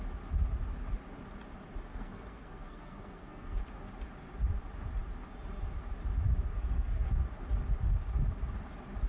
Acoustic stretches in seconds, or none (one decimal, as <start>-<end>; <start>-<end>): 0.0-1.9; 3.6-6.5; 7.1-9.1